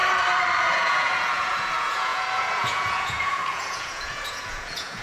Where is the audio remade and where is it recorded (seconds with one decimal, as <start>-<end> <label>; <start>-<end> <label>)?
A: 0.0-0.6 recorded; 0.6-5.0 remade

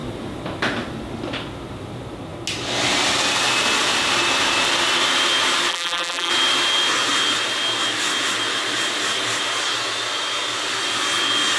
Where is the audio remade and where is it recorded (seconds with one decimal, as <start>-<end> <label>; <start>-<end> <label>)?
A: 0.0-5.7 recorded; 5.7-6.3 remade; 6.3-11.6 recorded

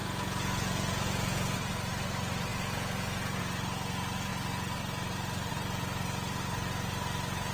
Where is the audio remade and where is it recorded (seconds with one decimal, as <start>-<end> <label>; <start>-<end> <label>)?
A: 0.0-1.7 remade; 1.7-2.5 recorded; 2.5-3.4 remade; 3.4-7.5 recorded

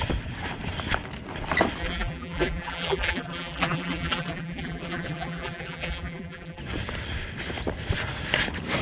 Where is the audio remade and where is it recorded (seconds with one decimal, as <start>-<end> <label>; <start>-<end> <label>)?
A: 0.0-1.8 recorded; 1.8-6.6 remade; 6.6-8.8 recorded

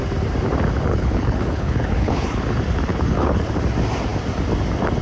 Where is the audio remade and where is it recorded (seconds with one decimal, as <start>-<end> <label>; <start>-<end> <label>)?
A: 0.0-0.9 recorded; 0.9-2.4 remade; 2.4-2.9 recorded; 2.9-3.5 remade; 3.5-5.0 recorded

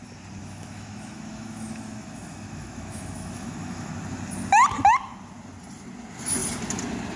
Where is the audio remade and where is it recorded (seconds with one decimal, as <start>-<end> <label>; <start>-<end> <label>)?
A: 0.0-0.4 recorded; 0.4-3.9 remade; 3.9-7.2 recorded

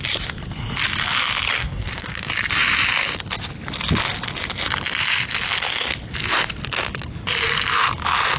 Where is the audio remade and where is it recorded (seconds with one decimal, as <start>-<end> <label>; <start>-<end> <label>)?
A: 0.0-1.6 recorded; 1.6-2.3 remade; 2.3-8.4 recorded